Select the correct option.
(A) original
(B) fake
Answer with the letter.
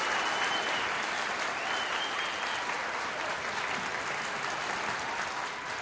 A